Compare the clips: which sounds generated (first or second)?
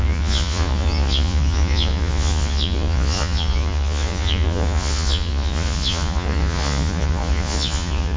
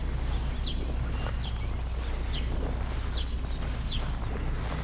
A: first